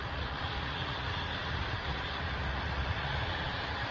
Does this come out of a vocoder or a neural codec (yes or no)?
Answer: yes